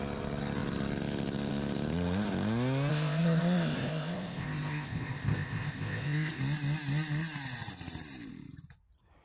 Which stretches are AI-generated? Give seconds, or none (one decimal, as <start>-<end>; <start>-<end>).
2.9-6.4